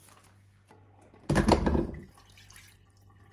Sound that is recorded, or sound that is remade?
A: recorded